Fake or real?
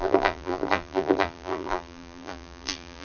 fake